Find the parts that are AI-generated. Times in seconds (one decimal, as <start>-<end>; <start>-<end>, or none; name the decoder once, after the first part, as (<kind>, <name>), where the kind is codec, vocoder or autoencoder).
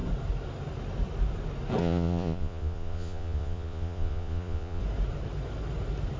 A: 1.8-4.8 (vocoder, Vocos)